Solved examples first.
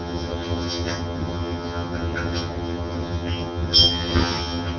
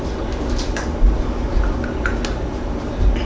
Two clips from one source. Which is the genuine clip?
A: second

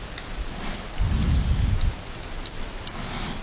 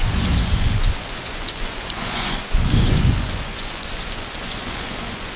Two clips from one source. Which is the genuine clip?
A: first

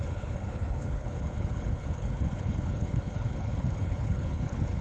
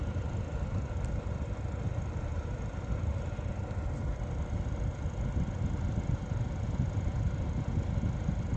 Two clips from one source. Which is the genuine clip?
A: second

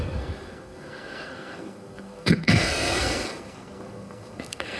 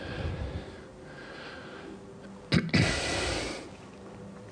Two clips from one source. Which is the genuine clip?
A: second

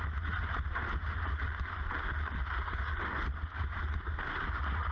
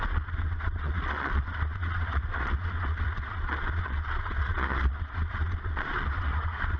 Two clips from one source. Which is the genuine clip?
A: first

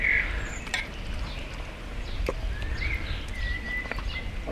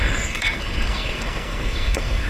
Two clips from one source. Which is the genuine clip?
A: first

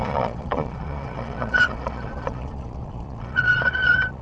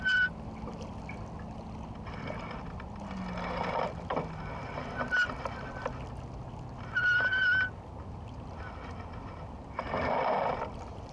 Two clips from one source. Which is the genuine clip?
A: second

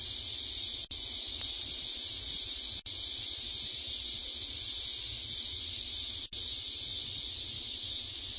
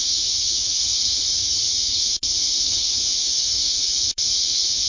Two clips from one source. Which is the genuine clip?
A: first